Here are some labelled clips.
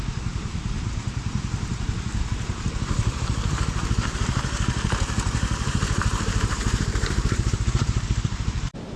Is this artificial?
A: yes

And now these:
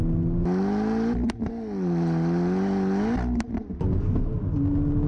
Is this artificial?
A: no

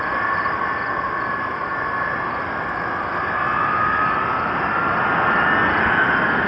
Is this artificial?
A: yes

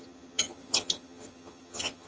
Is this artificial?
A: yes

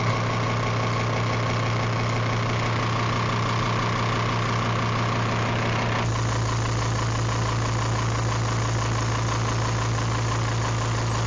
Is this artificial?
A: no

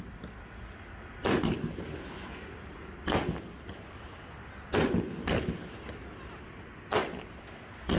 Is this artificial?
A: no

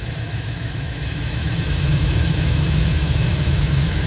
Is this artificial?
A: yes